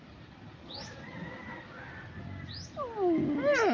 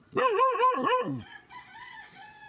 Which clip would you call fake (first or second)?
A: second